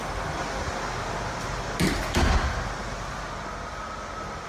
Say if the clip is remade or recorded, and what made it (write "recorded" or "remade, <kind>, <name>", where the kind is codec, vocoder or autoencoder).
recorded